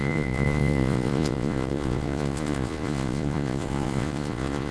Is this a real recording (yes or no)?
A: no